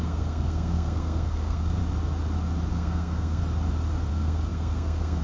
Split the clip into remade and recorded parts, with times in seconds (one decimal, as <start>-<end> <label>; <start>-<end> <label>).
0.0-1.8 remade; 1.8-2.7 recorded; 2.7-3.4 remade; 3.4-4.1 recorded; 4.1-5.2 remade